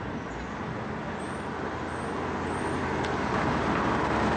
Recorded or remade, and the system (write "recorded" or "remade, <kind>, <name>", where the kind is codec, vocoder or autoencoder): recorded